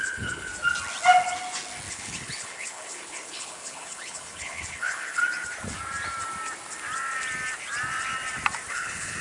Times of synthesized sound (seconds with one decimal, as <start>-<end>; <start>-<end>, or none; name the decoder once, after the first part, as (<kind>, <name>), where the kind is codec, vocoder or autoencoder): 0.0-0.5 (codec, HILCodec); 1.9-5.2; 8.7-9.2